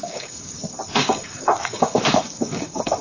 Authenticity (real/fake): fake